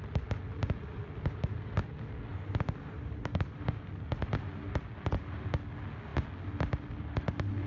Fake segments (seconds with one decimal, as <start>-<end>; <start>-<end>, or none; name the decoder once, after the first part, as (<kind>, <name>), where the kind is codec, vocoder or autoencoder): 2.3-3.9 (vocoder, BigVGAN v2)